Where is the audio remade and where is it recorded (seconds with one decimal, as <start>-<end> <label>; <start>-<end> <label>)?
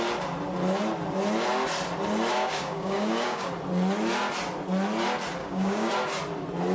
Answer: 0.0-2.3 recorded; 2.3-3.5 remade; 3.5-5.4 recorded; 5.4-5.9 remade; 5.9-6.7 recorded